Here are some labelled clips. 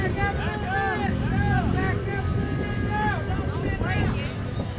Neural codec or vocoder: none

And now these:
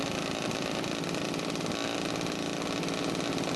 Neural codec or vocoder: none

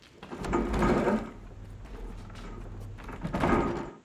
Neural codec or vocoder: none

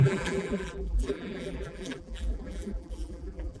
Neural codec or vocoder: vocoder, BigVGAN v2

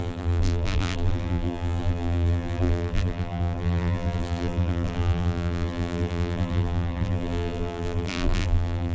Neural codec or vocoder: vocoder, BigVGAN v2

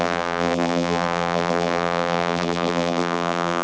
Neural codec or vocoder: vocoder, BigVGAN v2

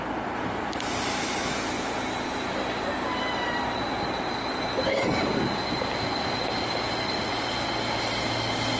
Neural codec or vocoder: none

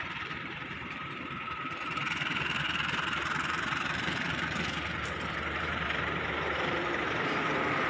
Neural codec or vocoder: vocoder, BigVGAN v2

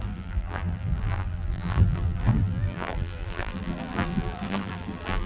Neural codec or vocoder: vocoder, BigVGAN v2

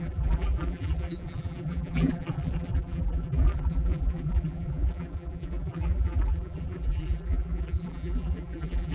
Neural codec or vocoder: vocoder, BigVGAN v2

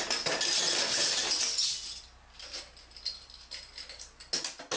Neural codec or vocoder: none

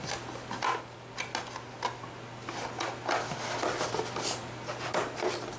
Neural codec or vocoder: none